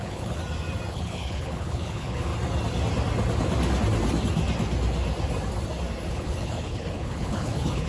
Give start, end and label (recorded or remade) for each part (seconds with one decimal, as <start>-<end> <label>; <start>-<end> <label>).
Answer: 0.0-0.4 remade; 0.4-0.9 recorded; 0.9-2.3 remade; 2.3-6.1 recorded; 6.1-7.9 remade